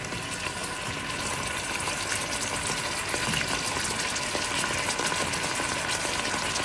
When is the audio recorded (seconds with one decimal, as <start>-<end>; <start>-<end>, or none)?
0.0-6.6